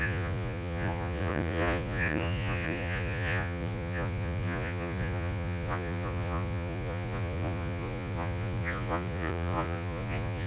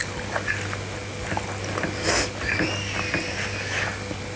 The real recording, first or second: second